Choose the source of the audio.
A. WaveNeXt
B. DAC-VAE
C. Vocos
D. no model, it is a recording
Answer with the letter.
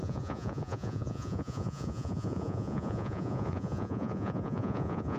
C